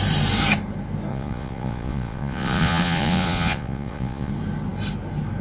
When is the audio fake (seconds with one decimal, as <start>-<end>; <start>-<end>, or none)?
1.1-4.3